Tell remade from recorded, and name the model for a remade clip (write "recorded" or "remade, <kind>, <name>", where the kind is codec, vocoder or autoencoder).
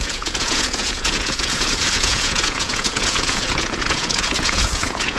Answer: remade, vocoder, Vocos